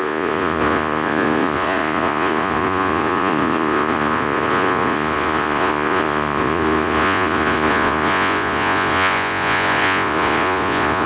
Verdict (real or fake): fake